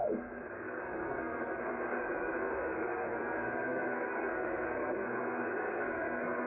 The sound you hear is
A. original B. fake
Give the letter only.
B